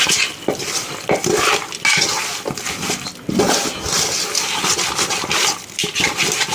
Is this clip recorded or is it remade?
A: recorded